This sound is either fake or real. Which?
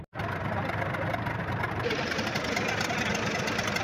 real